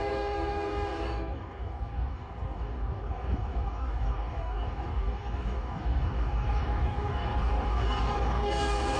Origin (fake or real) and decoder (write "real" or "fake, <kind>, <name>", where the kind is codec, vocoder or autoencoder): fake, codec, DAC